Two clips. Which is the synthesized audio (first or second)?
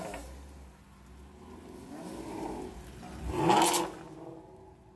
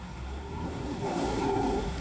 second